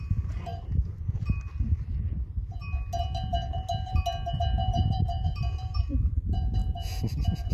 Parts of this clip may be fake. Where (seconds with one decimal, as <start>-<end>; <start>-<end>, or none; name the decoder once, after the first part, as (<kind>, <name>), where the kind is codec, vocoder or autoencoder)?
4.7-6.0 (vocoder, BigVGAN v2)